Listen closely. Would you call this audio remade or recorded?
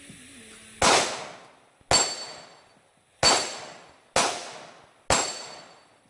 recorded